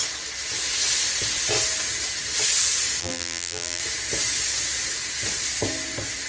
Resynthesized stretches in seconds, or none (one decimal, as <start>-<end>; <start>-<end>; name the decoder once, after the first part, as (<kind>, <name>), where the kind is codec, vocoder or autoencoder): 3.0-3.8 (vocoder, BigVGAN v2)